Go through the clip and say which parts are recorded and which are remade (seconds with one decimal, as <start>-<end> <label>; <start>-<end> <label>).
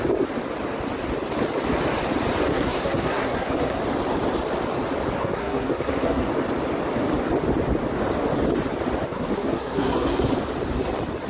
0.0-2.5 recorded; 2.5-3.8 remade; 3.8-5.2 recorded; 5.2-6.3 remade; 6.3-9.1 recorded; 9.1-10.3 remade; 10.3-11.3 recorded